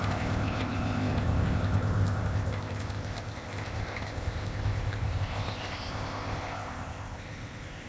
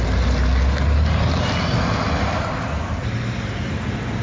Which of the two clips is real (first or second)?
second